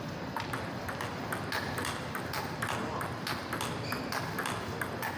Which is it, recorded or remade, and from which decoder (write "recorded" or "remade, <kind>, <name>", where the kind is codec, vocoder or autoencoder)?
recorded